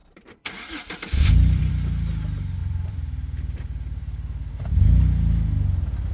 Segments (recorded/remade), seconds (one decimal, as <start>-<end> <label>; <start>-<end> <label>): 0.0-1.7 remade; 1.7-2.6 recorded; 2.6-4.5 remade; 4.5-6.1 recorded